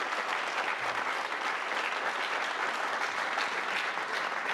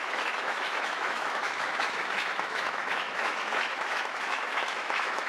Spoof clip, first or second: second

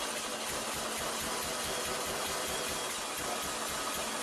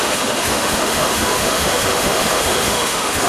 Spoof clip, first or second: second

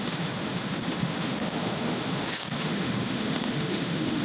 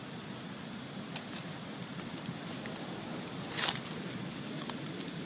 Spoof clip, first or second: first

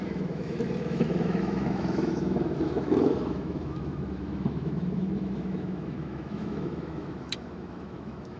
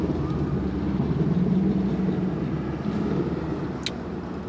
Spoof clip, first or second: first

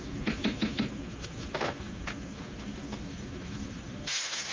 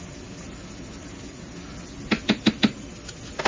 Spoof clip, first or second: first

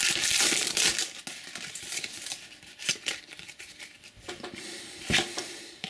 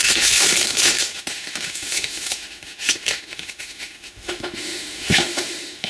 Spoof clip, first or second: second